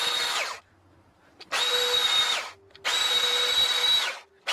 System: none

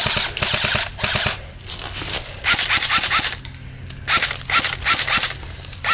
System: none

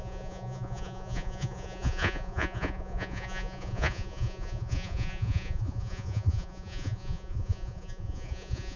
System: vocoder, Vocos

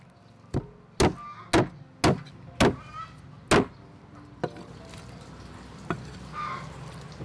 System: none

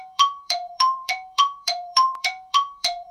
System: vocoder, Vocos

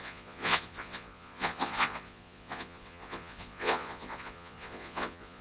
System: vocoder, Vocos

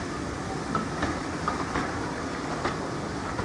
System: none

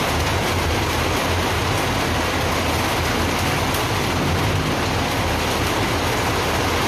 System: none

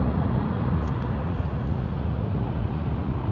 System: vocoder, Vocos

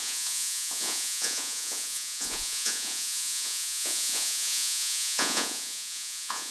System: vocoder, Vocos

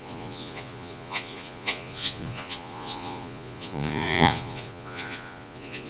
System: vocoder, Vocos